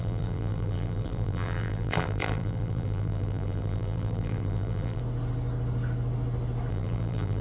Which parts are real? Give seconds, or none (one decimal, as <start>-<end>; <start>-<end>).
5.0-6.7